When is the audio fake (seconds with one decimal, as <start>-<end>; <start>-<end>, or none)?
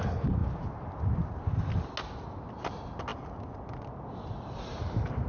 none